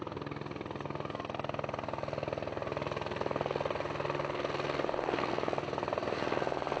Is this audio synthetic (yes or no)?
no